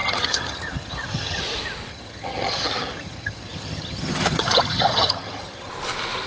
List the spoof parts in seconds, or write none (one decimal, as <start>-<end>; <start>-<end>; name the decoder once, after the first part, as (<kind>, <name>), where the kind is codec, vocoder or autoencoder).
0.0-1.4 (vocoder, HiFi-GAN); 1.9-5.7